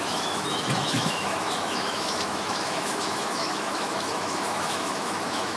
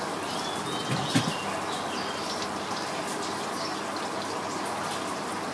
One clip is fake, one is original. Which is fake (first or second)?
first